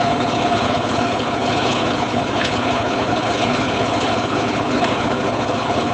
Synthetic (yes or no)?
yes